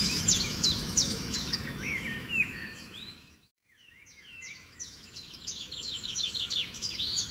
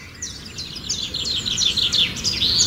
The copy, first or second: first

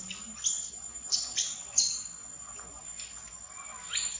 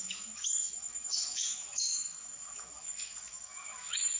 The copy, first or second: second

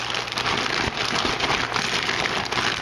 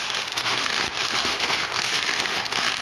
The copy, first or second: second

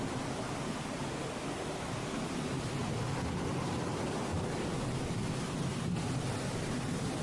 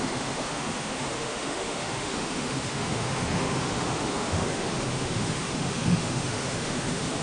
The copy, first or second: second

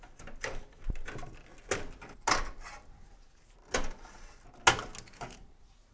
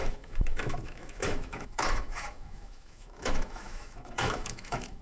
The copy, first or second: second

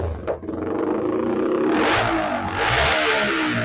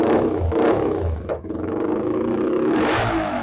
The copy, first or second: second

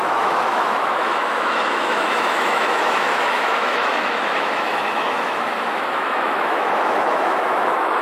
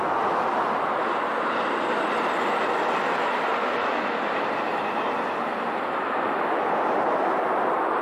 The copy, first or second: first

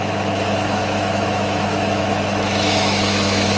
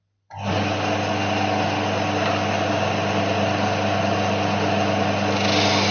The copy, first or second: first